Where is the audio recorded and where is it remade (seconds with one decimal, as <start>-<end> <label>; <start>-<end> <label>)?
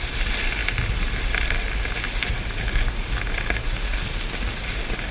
0.0-5.1 recorded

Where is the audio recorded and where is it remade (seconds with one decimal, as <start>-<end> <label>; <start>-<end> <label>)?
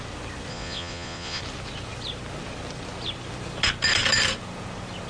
0.0-0.5 recorded; 0.5-1.4 remade; 1.4-5.1 recorded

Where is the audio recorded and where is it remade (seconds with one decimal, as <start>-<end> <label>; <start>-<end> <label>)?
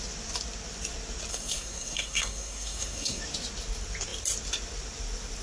0.0-1.3 recorded; 1.3-3.2 remade; 3.2-5.4 recorded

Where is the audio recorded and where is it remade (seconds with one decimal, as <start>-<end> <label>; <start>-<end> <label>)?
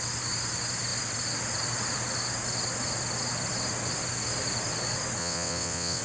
0.0-5.2 recorded; 5.2-6.0 remade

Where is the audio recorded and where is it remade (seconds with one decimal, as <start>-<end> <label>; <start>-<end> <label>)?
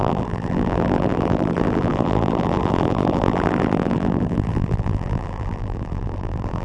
0.0-6.6 remade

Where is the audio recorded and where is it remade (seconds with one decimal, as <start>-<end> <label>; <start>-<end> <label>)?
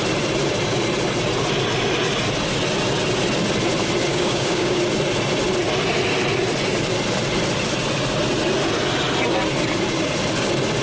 0.0-4.1 recorded; 4.1-4.8 remade; 4.8-10.8 recorded